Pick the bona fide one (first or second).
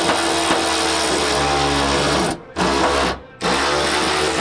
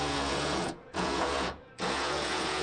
first